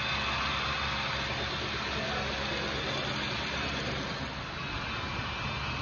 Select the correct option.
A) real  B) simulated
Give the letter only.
A